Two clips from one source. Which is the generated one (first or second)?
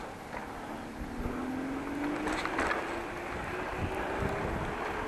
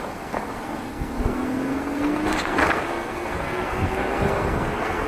second